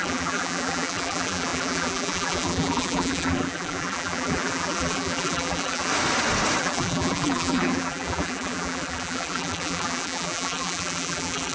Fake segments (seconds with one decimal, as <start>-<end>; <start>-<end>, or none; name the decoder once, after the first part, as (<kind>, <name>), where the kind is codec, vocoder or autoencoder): 0.0-5.9 (vocoder, BigVGAN v2); 6.6-11.5